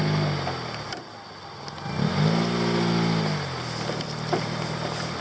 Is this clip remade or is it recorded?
recorded